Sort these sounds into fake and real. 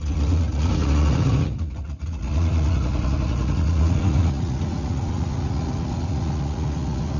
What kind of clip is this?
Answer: fake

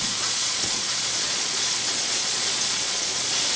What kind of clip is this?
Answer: fake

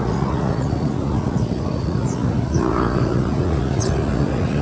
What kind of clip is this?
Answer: fake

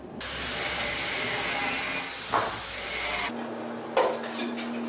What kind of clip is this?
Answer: real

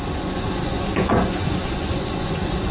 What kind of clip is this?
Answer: fake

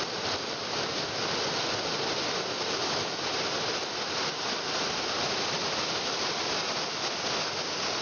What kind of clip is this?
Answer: real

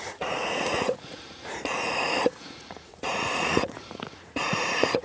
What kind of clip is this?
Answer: fake